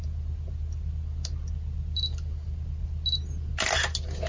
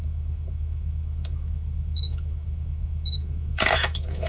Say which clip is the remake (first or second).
second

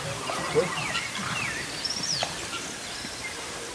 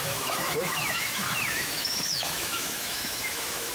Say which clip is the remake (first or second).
second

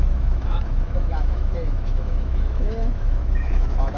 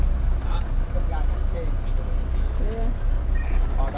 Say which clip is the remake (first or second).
first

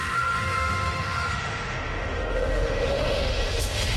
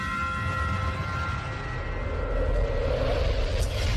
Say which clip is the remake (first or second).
first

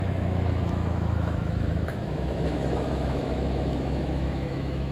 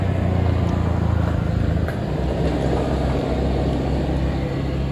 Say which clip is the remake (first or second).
first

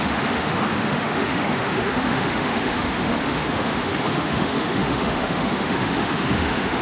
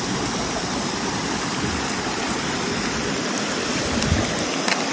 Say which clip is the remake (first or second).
first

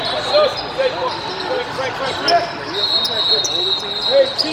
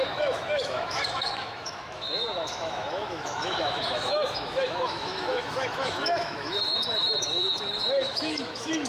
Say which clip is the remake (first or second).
second